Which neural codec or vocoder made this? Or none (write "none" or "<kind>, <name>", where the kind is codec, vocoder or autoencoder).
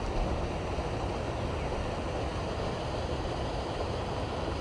none